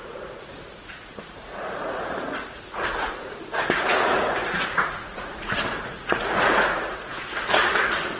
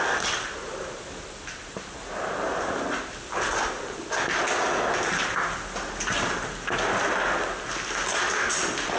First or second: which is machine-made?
first